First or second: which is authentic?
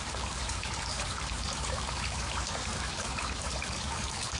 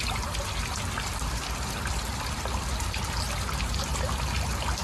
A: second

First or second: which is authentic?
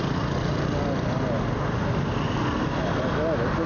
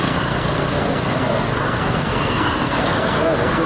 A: first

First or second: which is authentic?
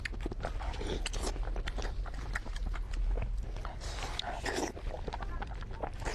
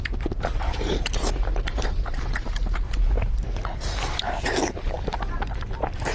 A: first